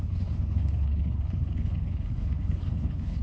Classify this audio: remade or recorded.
remade